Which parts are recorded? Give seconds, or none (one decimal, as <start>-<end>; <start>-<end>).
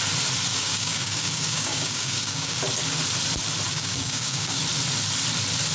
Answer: 0.0-0.5; 2.6-3.7; 4.6-5.7